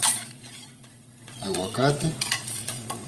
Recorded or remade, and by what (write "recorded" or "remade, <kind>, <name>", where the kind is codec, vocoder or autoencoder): remade, vocoder, Vocos